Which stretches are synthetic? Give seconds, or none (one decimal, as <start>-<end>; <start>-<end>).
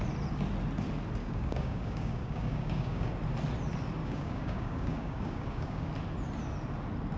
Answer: 1.2-3.1; 4.0-5.9